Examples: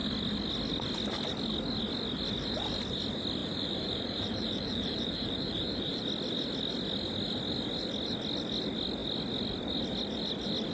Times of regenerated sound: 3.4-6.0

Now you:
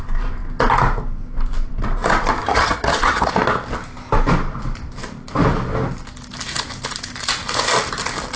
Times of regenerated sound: 2.4-3.3

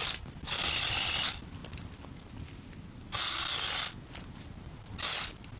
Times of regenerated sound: none

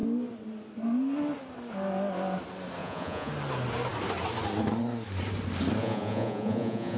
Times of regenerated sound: 2.8-3.3; 5.8-7.0

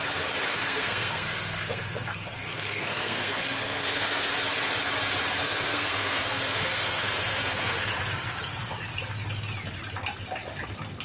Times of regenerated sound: 0.5-4.3; 5.4-7.9

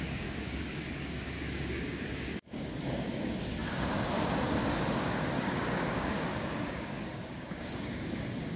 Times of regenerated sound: 0.0-8.6

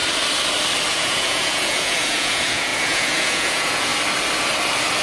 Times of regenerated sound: 0.9-3.9

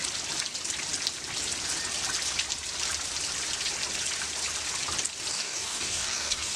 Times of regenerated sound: 5.3-6.6